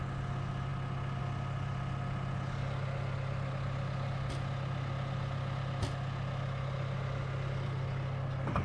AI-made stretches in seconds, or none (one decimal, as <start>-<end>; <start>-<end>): none